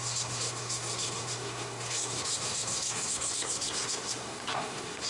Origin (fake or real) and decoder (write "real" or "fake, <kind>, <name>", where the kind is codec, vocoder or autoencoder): fake, codec, SNAC